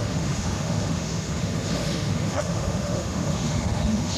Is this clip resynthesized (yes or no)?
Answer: yes